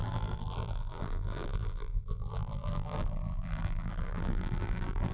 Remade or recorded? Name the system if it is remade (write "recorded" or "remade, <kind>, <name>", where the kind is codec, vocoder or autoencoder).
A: remade, vocoder, BigVGAN v2